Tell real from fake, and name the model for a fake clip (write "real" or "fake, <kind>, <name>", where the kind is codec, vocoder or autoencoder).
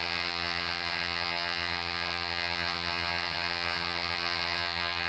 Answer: fake, vocoder, HiFi-GAN